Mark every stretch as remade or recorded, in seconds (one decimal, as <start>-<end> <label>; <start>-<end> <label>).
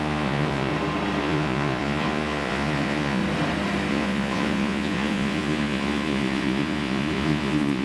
0.0-0.7 remade; 0.7-1.2 recorded; 1.2-3.2 remade; 3.2-3.9 recorded; 3.9-7.8 remade